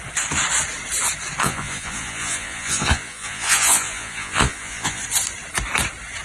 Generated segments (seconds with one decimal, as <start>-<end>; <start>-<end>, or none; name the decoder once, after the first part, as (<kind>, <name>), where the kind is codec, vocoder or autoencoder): 1.4-5.0 (vocoder, Vocos)